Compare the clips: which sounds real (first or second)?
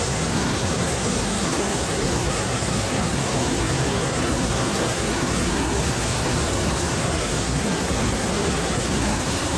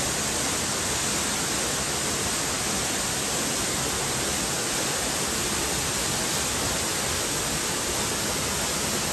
second